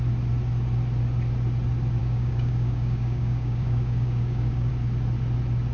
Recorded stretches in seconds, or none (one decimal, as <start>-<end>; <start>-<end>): 0.0-2.0; 4.7-5.7